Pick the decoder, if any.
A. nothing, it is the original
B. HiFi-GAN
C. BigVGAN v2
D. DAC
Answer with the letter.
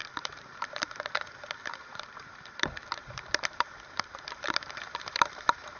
C